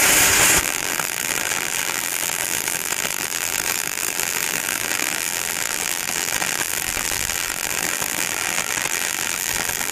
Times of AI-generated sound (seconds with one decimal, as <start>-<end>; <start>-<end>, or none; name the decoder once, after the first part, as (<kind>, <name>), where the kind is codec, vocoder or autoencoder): 0.6-9.9 (vocoder, BigVGAN v2)